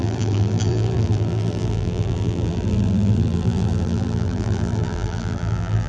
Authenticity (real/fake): fake